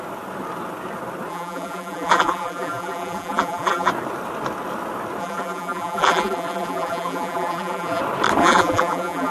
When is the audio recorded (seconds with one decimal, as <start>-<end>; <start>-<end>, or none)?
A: 0.0-1.3; 3.9-5.2; 8.0-8.4